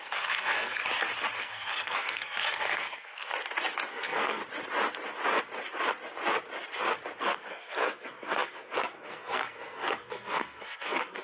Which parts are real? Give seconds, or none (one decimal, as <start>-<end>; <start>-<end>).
0.8-1.4; 3.3-3.9; 4.4-7.2